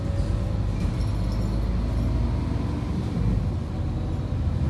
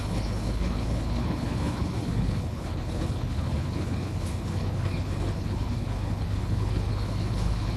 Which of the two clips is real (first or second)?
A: first